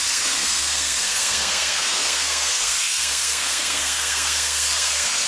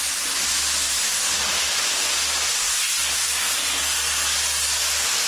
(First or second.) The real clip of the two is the second